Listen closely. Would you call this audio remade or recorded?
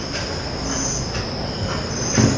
recorded